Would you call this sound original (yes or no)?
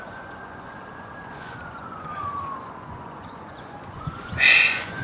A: no